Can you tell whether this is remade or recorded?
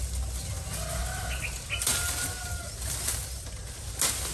recorded